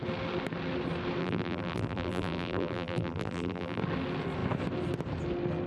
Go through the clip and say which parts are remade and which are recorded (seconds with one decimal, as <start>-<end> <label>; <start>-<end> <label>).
0.0-1.2 recorded; 1.2-3.8 remade; 3.8-5.7 recorded